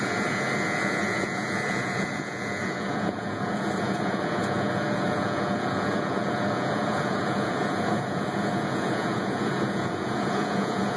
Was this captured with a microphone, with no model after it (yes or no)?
no